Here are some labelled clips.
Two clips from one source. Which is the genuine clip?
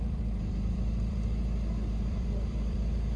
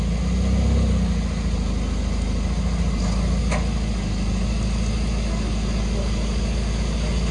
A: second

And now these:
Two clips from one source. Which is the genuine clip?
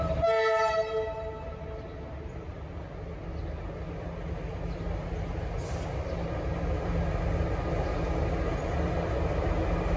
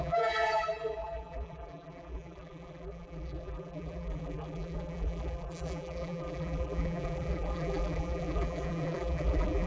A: first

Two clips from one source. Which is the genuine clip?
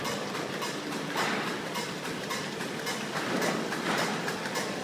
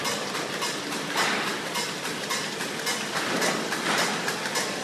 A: second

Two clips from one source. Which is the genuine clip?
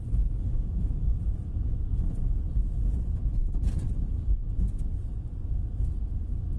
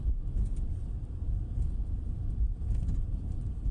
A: first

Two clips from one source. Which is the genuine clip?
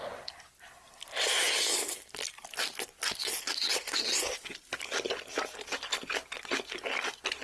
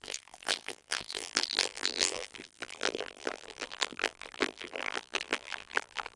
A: first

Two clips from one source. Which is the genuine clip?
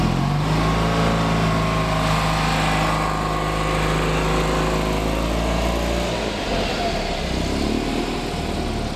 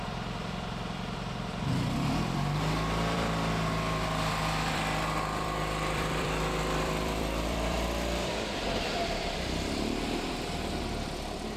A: first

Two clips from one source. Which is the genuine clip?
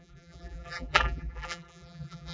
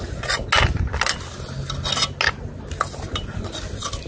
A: second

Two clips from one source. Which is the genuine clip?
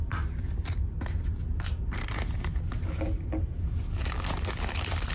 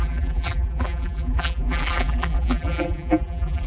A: first